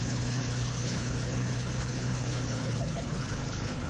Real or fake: fake